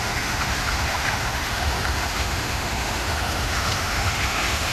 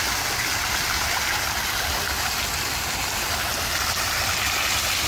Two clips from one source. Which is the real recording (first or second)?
second